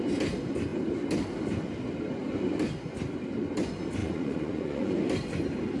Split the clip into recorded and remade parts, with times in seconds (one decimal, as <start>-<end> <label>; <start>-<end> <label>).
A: 0.0-4.0 recorded; 4.0-5.0 remade; 5.0-5.8 recorded